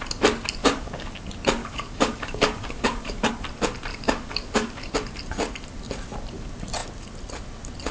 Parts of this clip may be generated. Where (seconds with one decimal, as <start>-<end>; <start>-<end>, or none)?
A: 0.6-1.1; 1.6-3.3; 3.9-4.9